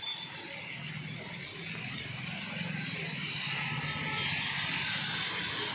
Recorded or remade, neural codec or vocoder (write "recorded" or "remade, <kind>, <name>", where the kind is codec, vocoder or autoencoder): recorded